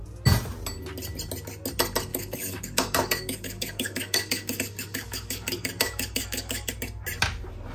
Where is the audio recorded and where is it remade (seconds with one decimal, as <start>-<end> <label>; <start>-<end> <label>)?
0.0-2.1 recorded; 2.1-6.7 remade; 6.7-7.7 recorded